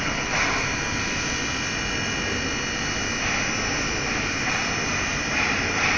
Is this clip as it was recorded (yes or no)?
yes